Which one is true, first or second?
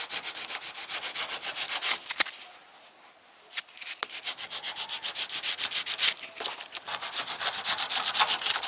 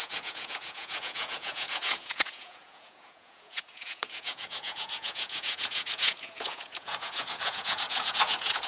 first